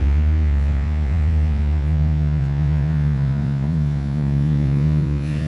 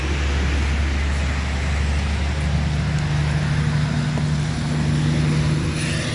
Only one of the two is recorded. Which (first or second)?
second